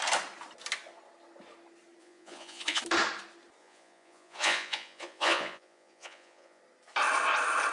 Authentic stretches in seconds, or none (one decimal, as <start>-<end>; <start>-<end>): 0.0-2.0; 2.8-3.6; 6.6-7.7